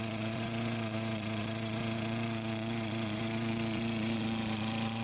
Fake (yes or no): yes